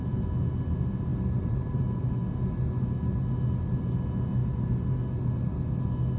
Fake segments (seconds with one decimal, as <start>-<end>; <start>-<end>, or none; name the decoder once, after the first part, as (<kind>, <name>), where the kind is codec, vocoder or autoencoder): 1.1-1.8 (vocoder, BigVGAN v2); 4.4-5.0